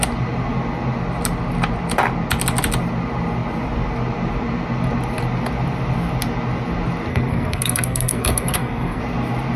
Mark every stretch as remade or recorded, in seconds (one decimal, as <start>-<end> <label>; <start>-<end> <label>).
0.0-7.1 recorded; 7.1-9.0 remade; 9.0-9.6 recorded

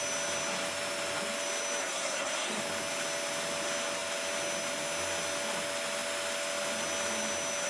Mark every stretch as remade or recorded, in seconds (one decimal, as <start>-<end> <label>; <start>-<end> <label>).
0.0-1.8 recorded; 1.8-2.6 remade; 2.6-7.7 recorded

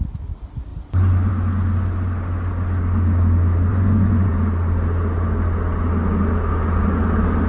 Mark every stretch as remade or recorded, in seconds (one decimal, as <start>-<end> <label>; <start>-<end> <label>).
0.0-3.7 recorded; 3.7-4.3 remade; 4.3-7.5 recorded